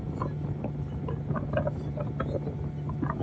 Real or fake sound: real